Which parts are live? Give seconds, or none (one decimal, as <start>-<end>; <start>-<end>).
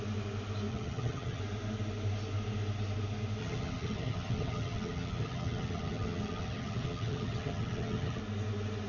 0.0-0.7; 1.4-3.4; 8.2-8.9